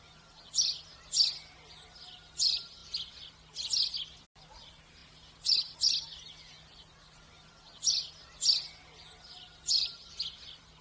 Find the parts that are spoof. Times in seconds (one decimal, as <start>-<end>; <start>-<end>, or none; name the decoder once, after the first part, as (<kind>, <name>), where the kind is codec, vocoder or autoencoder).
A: none